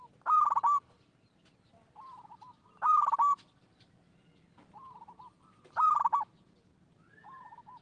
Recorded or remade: recorded